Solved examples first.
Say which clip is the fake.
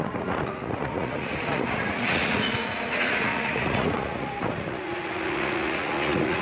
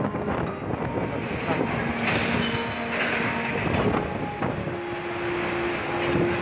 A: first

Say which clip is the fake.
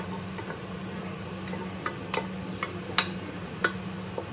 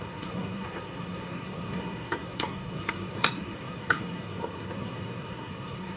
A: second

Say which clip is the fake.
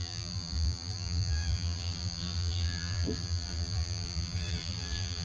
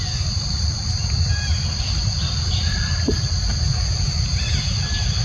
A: first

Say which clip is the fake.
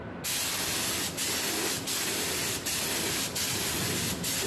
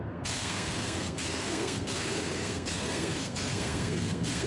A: second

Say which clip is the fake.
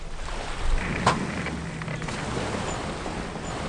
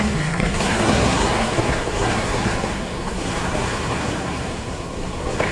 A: second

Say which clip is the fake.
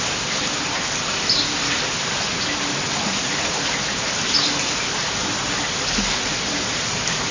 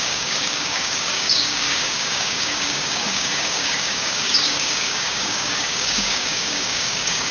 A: second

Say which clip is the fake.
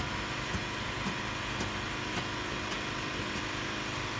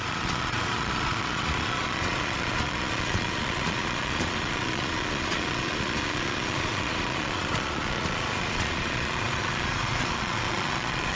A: second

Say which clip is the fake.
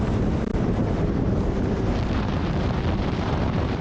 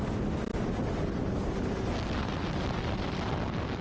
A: first